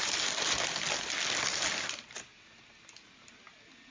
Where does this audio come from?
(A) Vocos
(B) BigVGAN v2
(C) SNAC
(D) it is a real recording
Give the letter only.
D